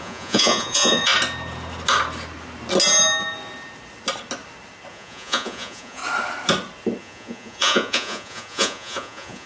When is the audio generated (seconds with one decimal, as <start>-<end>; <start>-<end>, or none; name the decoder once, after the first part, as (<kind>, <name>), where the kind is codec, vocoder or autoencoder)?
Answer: 0.0-1.1 (vocoder, Vocos); 4.9-6.0; 7.0-9.5